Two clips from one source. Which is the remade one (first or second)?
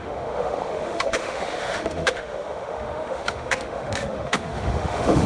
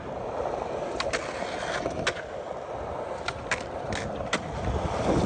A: first